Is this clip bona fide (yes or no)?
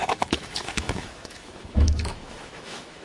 no